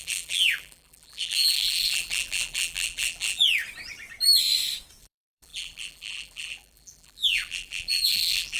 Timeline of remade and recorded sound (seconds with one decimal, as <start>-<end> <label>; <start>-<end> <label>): 0.0-3.4 remade; 3.4-5.0 recorded; 5.0-8.6 remade